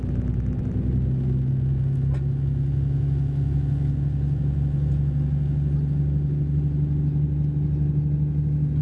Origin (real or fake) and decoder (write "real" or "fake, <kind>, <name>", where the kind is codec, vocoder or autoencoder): real